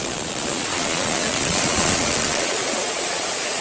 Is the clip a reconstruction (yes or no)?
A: yes